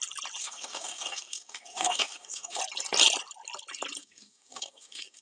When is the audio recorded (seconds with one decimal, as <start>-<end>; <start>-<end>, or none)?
0.0-0.4; 2.6-4.0